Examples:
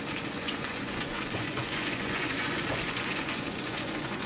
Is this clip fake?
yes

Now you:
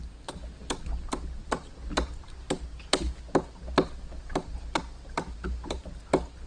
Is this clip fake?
no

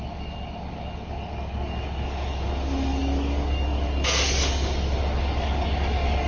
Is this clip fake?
yes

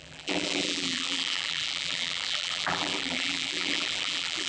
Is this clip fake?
yes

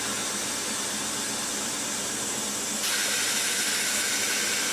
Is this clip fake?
no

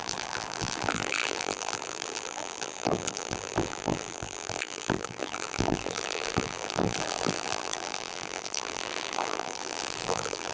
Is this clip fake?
yes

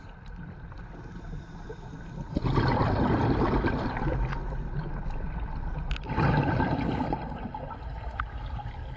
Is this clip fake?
no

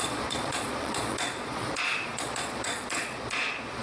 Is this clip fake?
yes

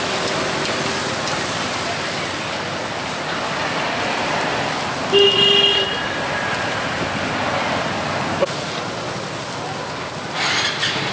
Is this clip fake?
no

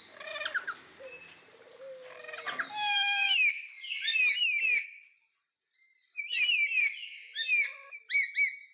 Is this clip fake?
yes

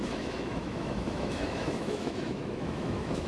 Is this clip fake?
yes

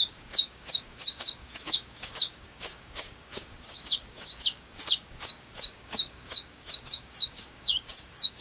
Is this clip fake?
yes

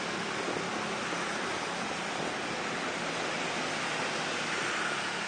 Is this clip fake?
no